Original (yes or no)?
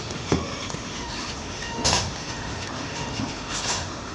no